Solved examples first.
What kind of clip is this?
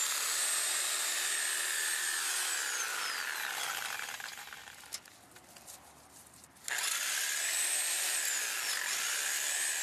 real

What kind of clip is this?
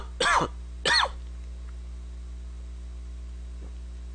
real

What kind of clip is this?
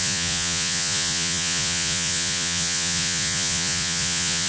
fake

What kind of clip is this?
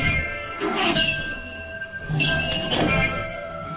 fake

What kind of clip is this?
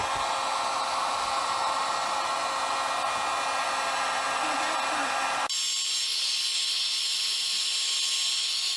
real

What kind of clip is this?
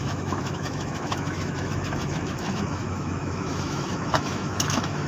fake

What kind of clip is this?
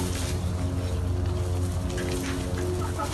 real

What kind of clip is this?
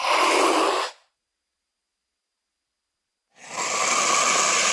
real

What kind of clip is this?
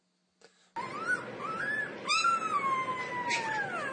real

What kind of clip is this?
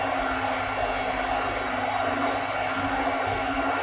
real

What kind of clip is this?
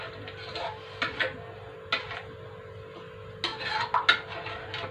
real